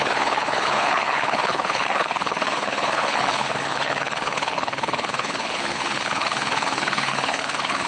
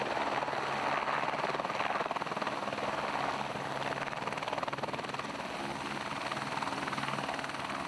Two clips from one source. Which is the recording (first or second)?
second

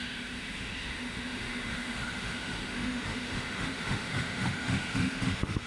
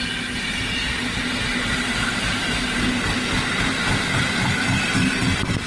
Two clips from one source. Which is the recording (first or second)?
second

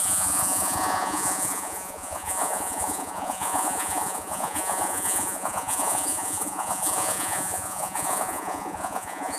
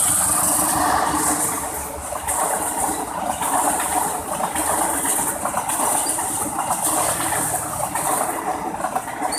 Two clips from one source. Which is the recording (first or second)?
second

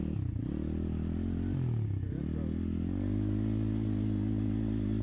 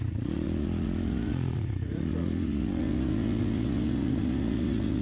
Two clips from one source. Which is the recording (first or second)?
first